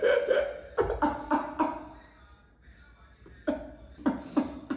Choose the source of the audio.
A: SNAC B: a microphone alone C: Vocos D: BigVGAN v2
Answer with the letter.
B